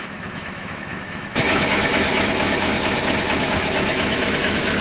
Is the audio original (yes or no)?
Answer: no